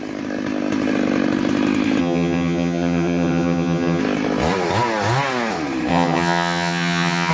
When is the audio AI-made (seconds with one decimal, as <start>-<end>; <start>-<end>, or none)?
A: 2.0-4.0; 5.9-7.3